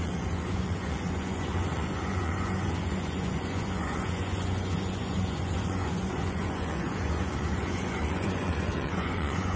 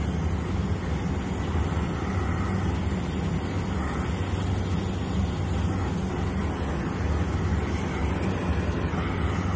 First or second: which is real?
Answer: second